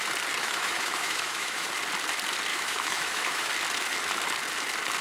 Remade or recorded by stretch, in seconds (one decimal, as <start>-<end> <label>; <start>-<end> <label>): 0.0-0.4 recorded; 0.4-1.7 remade; 1.7-2.5 recorded; 2.5-3.5 remade; 3.5-5.0 recorded